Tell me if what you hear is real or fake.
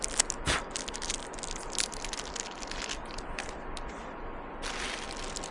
real